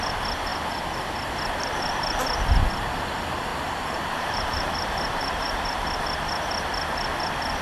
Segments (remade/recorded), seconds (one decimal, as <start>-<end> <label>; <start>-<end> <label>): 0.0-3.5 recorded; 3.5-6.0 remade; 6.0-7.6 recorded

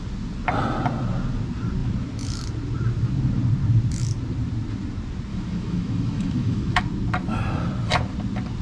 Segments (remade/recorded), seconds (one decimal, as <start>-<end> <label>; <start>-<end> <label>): 0.0-5.3 recorded; 5.3-6.8 remade; 6.8-8.6 recorded

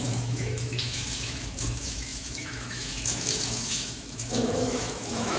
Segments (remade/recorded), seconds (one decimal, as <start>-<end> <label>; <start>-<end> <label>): 0.0-5.4 remade

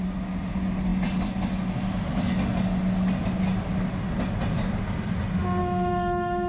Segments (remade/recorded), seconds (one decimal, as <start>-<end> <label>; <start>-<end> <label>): 0.0-5.6 recorded; 5.6-6.5 remade

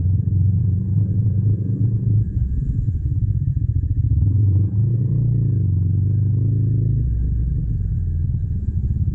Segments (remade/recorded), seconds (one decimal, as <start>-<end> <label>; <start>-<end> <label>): 0.0-5.1 remade; 5.1-8.6 recorded; 8.6-9.1 remade

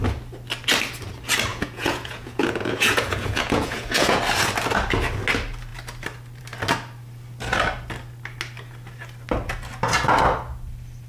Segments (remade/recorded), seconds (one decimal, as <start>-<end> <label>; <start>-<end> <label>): 0.0-1.5 recorded; 1.5-4.2 remade; 4.2-11.1 recorded

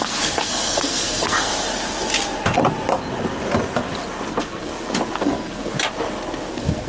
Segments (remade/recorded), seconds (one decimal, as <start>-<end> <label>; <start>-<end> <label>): 0.0-1.5 remade; 1.5-4.3 recorded; 4.3-4.7 remade; 4.7-5.2 recorded; 5.2-5.7 remade; 5.7-6.5 recorded; 6.5-6.9 remade

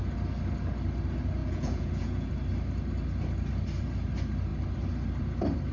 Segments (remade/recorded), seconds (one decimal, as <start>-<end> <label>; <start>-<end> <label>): 0.0-1.4 recorded; 1.4-2.3 remade; 2.3-5.7 recorded